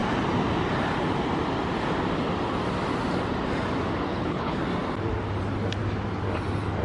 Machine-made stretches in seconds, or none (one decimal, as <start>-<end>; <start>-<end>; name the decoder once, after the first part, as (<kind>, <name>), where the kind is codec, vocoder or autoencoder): 4.1-4.6 (codec, HILCodec)